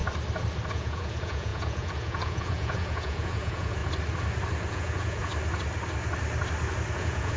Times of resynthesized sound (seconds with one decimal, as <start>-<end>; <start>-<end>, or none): 0.7-3.8; 4.7-5.3; 6.9-7.4

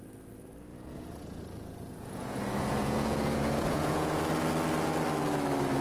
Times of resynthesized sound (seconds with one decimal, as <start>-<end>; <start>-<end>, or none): 0.7-4.2

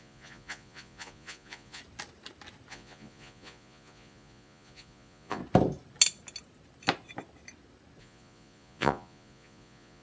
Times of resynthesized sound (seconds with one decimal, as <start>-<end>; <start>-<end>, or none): 0.0-1.8; 2.7-5.4; 8.0-10.0

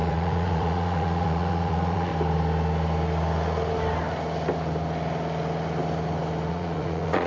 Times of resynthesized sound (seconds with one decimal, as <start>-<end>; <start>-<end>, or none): 0.0-2.1; 6.5-7.3